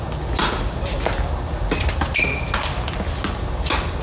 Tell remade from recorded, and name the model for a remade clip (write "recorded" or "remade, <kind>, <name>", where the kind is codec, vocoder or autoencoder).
recorded